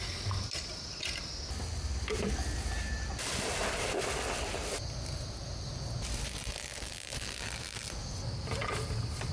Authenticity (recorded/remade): recorded